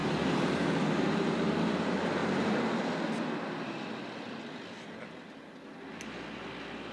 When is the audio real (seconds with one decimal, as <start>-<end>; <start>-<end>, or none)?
1.8-6.9